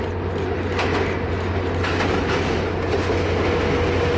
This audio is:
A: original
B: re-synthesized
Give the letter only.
A